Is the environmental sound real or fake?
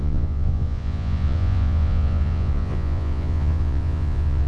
fake